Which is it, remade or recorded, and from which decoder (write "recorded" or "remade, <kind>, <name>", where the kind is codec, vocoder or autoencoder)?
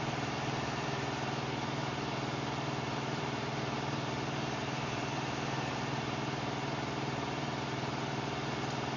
remade, vocoder, BigVGAN v2